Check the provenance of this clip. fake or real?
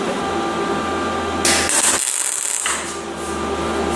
real